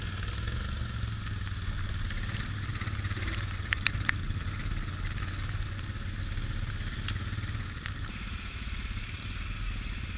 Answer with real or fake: real